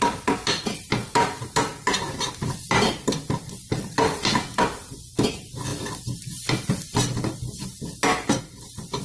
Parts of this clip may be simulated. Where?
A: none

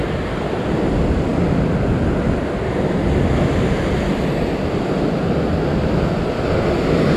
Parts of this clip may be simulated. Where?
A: none

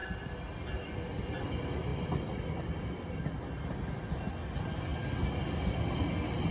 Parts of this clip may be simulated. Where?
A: none